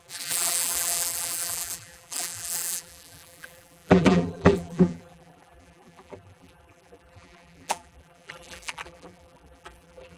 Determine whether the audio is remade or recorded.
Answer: remade